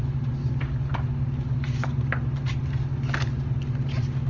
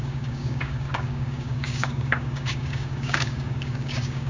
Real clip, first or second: first